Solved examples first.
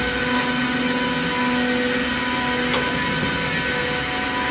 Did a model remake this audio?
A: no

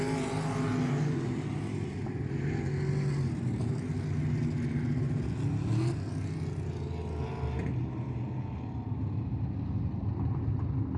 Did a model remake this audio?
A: no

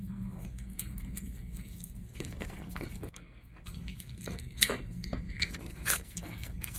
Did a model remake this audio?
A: yes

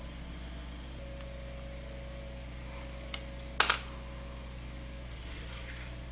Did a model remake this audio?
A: no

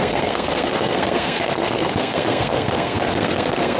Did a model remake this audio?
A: yes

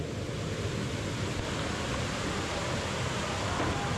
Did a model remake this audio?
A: no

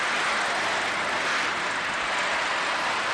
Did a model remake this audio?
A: no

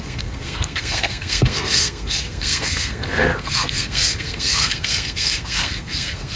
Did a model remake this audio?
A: yes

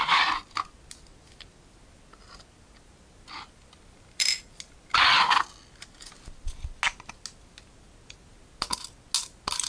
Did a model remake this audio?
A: no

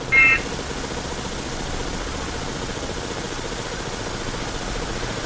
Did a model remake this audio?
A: no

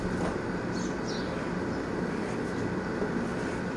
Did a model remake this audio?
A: no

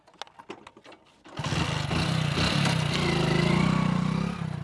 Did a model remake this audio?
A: no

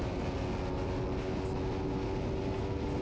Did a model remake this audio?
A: no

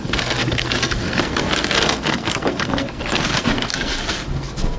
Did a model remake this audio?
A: yes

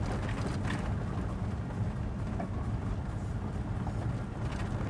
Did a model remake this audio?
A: no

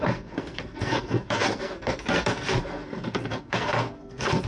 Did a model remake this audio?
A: yes